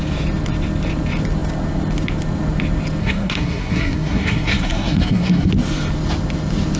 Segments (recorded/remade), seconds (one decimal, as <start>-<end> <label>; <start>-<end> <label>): 0.0-3.0 recorded; 3.0-5.5 remade; 5.5-6.8 recorded